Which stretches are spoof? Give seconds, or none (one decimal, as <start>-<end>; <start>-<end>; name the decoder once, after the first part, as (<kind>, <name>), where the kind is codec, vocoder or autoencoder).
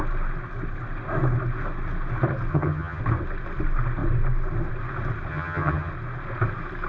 2.5-3.0 (vocoder, HiFi-GAN); 5.3-5.9